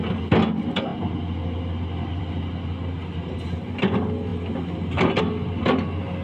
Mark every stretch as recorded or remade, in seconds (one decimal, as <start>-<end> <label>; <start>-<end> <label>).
0.0-6.2 recorded